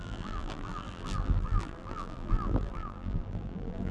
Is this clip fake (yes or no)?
yes